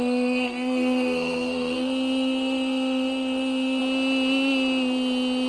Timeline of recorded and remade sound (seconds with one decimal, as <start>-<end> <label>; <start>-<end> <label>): 0.0-3.8 remade; 3.8-5.5 recorded